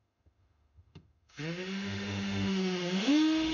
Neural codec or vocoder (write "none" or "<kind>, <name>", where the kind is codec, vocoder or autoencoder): autoencoder, DAC-VAE